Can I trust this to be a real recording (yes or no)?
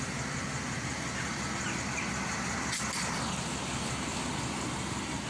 yes